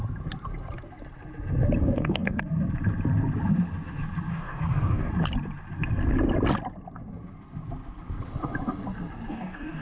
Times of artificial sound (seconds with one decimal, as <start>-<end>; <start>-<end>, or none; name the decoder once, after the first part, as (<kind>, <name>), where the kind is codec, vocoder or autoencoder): 1.8-2.4 (codec, DAC); 4.3-5.1; 9.3-9.8